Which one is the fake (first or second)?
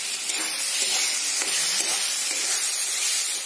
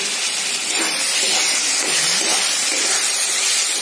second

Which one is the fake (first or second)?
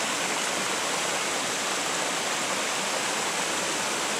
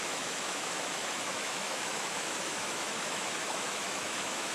second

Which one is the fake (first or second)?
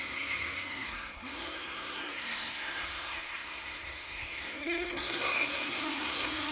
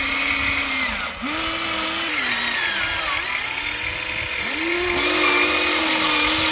first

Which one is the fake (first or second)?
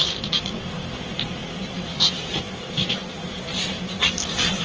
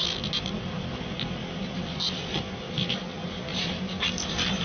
first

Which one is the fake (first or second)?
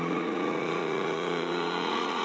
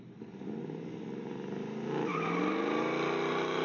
first